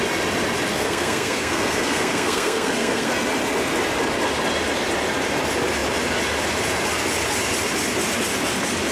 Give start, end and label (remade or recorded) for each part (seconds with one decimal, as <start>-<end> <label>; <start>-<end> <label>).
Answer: 0.0-0.7 recorded; 0.7-3.1 remade; 3.1-8.9 recorded